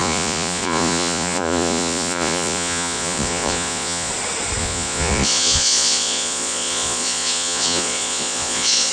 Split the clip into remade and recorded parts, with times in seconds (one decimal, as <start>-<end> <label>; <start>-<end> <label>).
0.0-4.1 remade; 4.1-4.6 recorded; 4.6-8.9 remade